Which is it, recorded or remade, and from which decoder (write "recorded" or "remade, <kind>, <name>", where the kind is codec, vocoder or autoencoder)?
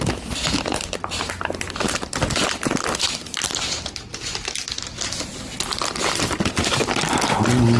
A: recorded